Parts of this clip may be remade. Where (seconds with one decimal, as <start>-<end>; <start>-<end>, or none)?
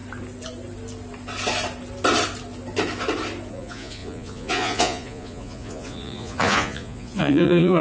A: 3.5-7.8